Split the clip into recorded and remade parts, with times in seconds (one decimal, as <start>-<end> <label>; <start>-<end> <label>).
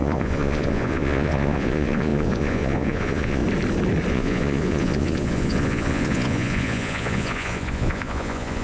0.0-3.4 remade; 3.4-4.1 recorded; 4.1-8.6 remade